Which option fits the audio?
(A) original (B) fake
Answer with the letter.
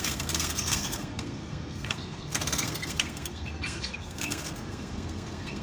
B